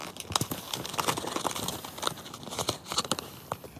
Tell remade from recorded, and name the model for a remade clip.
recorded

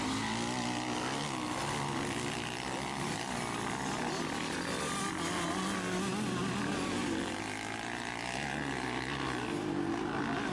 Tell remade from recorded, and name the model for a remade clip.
recorded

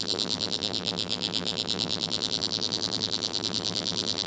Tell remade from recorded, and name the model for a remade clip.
remade, vocoder, BigVGAN v2